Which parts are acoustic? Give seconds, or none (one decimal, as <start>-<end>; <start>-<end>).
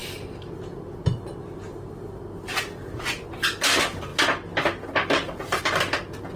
0.0-6.4